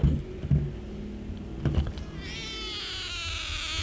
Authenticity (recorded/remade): recorded